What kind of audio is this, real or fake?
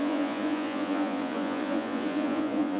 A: fake